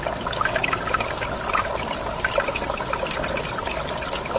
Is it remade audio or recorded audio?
recorded